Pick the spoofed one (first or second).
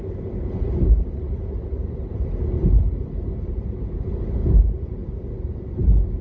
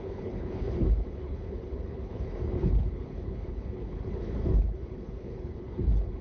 second